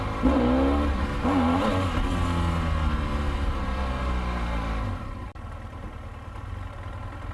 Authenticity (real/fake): real